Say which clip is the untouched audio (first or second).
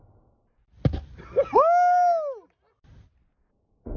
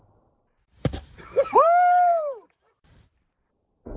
first